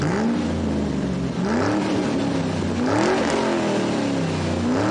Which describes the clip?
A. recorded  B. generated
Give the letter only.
A